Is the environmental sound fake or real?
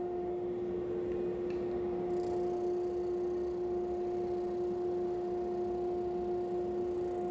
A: real